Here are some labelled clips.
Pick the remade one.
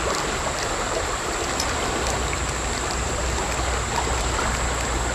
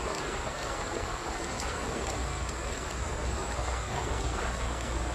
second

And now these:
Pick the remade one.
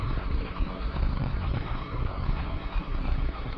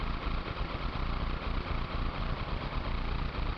first